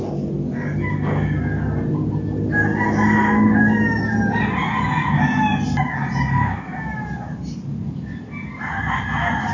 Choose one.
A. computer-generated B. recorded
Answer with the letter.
B